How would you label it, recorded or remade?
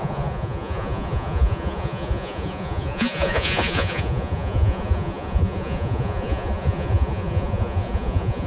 remade